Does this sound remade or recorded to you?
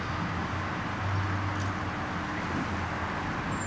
recorded